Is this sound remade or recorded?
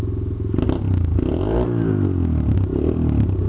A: recorded